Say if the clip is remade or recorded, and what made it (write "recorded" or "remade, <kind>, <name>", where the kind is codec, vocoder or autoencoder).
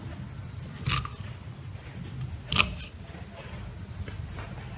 recorded